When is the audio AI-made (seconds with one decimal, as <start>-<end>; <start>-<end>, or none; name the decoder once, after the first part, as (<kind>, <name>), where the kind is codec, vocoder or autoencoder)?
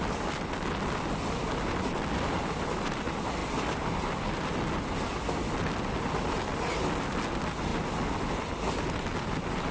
none